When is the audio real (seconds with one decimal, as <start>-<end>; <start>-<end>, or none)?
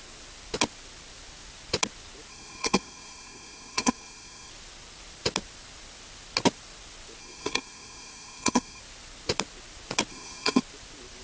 0.0-2.3; 4.5-7.2; 8.8-10.1; 10.6-11.2